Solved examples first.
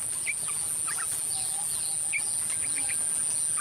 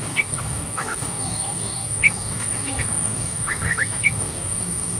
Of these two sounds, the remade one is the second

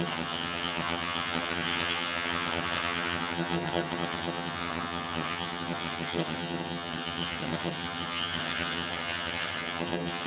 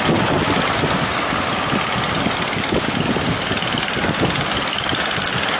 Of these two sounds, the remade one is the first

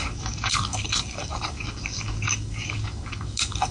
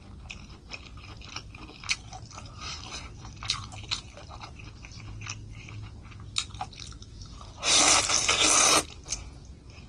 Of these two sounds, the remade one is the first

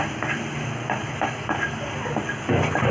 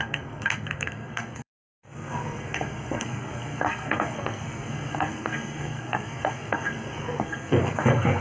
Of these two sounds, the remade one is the second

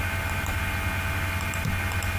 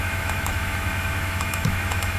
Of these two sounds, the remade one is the second